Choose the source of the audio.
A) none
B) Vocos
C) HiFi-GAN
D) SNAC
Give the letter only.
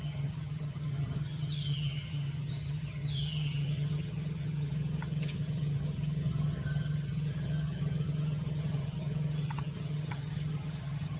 C